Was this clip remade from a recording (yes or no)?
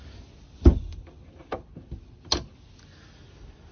no